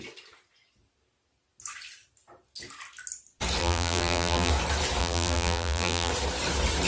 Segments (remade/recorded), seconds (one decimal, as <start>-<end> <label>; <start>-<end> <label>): 0.0-3.6 recorded; 3.6-4.5 remade; 4.5-5.0 recorded; 5.0-6.1 remade; 6.1-6.9 recorded